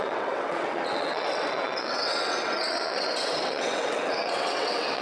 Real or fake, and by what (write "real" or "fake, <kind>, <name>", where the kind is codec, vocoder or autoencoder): fake, vocoder, WaveNeXt